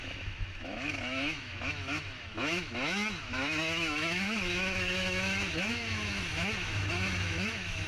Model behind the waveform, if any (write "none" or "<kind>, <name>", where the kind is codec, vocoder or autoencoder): autoencoder, DAC-VAE